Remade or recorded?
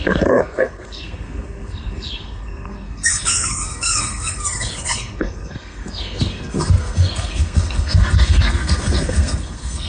remade